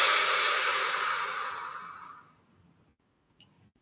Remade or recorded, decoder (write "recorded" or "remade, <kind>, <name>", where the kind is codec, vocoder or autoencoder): remade, vocoder, Vocos